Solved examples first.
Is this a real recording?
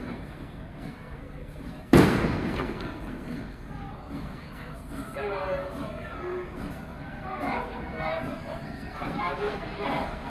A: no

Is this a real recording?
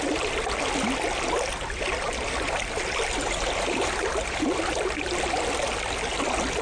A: yes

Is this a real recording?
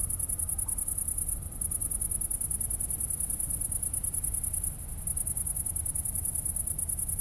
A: yes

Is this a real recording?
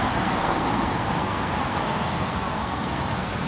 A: no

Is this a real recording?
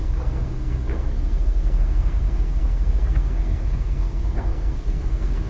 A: no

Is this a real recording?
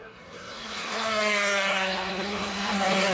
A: no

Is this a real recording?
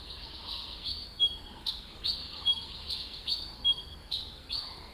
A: no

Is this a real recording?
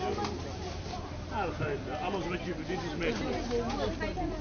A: yes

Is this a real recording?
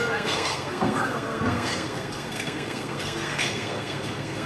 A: no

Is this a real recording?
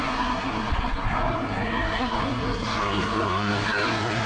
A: no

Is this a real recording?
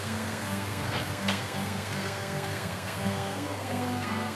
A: no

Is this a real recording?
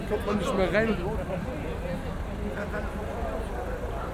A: yes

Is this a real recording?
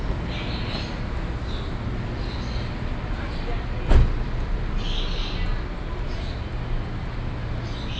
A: yes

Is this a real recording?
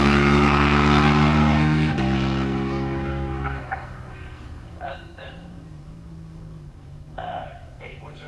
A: no